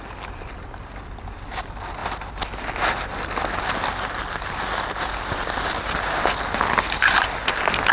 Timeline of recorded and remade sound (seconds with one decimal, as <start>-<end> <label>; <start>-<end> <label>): 0.0-7.9 recorded